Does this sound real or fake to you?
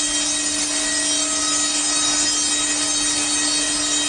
real